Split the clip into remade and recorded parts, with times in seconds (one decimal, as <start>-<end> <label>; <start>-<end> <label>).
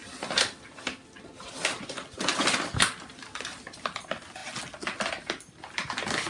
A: 0.0-6.3 recorded